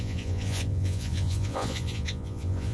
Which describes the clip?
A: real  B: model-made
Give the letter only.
B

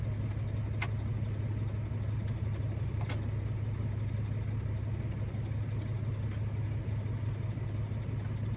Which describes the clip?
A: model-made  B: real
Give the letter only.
B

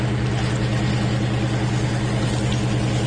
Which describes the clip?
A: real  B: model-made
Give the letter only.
A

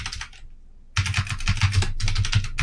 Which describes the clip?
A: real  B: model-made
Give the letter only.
A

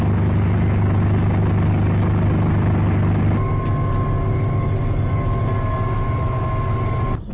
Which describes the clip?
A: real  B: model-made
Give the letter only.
A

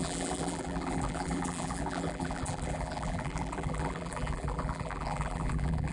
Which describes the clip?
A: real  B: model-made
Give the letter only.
B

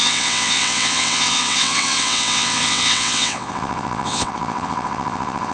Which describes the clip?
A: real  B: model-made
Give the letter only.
B